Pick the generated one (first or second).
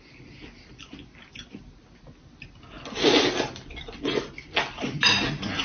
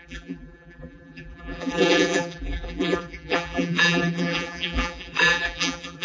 second